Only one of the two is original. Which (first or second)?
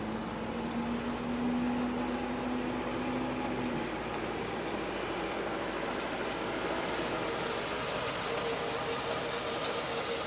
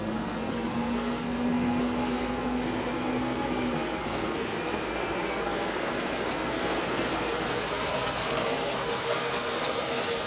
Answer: first